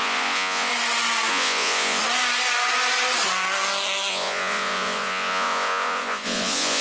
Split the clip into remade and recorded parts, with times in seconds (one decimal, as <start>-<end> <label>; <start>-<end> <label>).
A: 0.0-0.7 remade; 0.7-1.3 recorded; 1.3-2.0 remade; 2.0-4.1 recorded; 4.1-6.8 remade